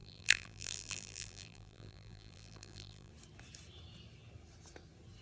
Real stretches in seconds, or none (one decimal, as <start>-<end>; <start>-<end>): 3.1-5.2